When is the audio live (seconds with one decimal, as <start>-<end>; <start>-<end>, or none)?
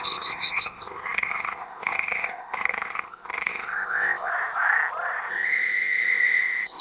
4.3-5.3